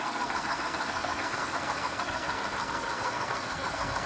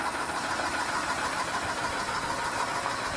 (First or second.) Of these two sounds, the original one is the second